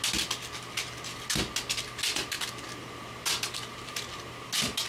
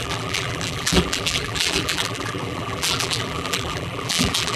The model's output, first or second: second